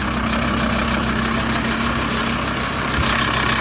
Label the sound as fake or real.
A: real